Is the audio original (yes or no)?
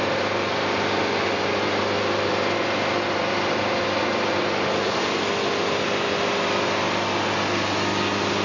yes